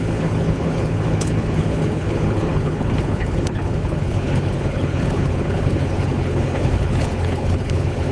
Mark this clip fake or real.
fake